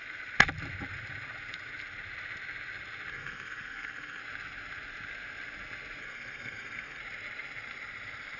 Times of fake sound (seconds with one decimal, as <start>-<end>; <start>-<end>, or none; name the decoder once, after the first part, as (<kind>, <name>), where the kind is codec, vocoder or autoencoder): 3.1-4.2 (codec, SNAC); 6.0-7.0

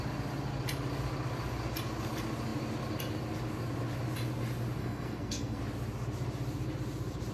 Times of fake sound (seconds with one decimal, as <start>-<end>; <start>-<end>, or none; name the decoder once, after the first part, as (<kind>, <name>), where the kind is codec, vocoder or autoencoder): 4.8-5.6 (codec, SNAC)

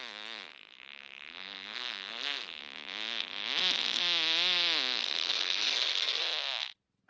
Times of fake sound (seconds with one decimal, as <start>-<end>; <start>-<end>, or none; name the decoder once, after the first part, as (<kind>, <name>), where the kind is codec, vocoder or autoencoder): 0.5-2.6 (codec, SNAC); 5.0-6.2

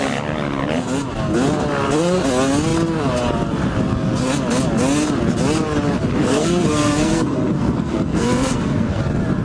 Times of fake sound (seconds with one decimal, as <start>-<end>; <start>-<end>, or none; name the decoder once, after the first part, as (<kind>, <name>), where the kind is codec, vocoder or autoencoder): 6.2-9.0 (codec, SNAC)